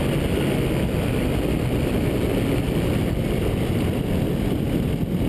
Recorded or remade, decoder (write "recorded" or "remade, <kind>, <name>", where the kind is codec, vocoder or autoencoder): recorded